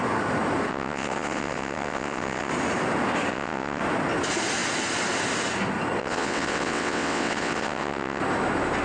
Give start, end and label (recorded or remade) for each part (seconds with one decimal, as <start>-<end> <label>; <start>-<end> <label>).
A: 0.0-0.7 recorded; 0.7-2.5 remade; 2.5-3.3 recorded; 3.3-3.8 remade; 3.8-6.0 recorded; 6.0-8.2 remade; 8.2-8.8 recorded